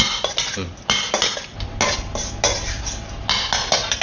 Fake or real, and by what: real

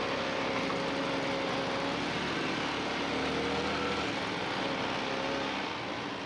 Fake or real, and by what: real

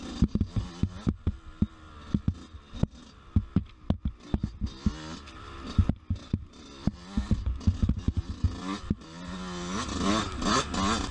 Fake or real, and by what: real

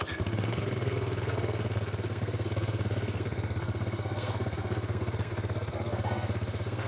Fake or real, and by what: fake, codec, SNAC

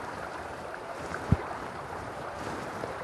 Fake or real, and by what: fake, vocoder, BigVGAN v2